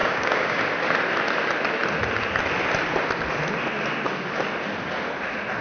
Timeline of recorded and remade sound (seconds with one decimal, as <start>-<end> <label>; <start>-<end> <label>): 0.0-0.6 remade; 0.6-5.6 recorded